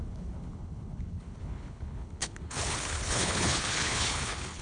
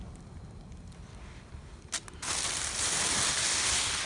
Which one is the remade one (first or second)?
first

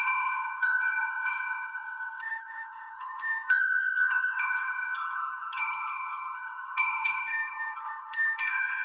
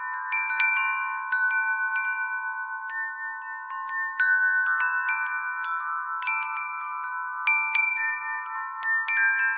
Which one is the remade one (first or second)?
first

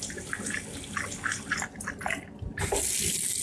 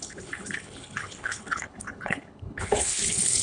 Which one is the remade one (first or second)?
second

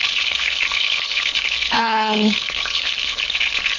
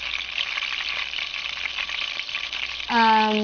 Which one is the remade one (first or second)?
first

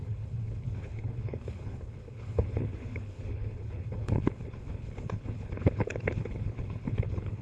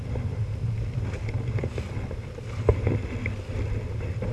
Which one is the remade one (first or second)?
first